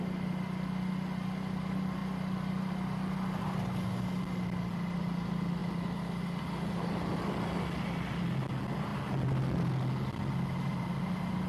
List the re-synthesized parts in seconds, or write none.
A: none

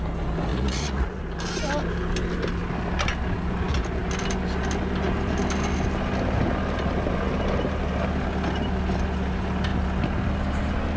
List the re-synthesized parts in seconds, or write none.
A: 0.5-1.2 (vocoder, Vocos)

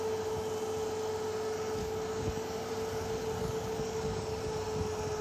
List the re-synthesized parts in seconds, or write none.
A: 1.8-2.7 (codec, DAC); 3.4-4.4

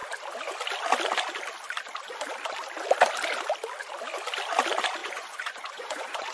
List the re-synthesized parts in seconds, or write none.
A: 5.0-6.3 (vocoder, Vocos)

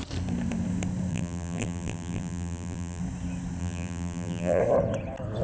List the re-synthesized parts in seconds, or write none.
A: 1.1-3.0 (vocoder, BigVGAN v2); 3.6-4.6

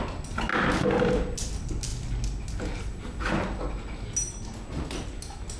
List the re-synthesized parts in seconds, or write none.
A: none

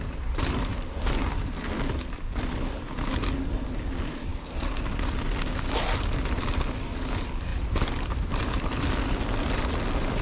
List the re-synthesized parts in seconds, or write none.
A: none

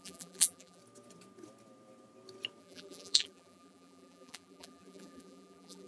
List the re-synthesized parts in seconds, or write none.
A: 0.0-0.8 (vocoder, BigVGAN v2); 2.6-5.9